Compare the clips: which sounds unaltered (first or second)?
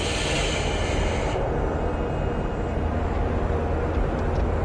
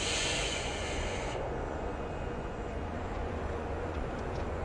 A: first